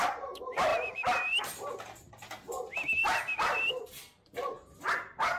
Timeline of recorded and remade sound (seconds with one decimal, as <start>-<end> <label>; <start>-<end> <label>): 0.0-3.0 recorded; 3.0-3.9 remade; 3.9-5.4 recorded

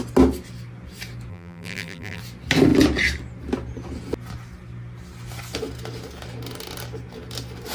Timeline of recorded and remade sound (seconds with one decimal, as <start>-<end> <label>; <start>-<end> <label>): 0.0-1.3 recorded; 1.3-2.2 remade; 2.2-7.7 recorded

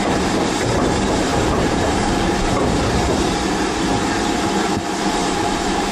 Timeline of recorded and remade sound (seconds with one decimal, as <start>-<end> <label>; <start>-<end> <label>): 0.0-1.3 recorded; 1.3-3.3 remade; 3.3-5.2 recorded; 5.2-5.9 remade